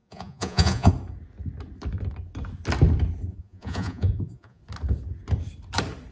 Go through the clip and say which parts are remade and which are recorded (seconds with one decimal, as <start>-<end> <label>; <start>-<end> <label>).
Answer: 0.0-0.9 remade; 0.9-3.3 recorded; 3.3-4.6 remade; 4.6-6.1 recorded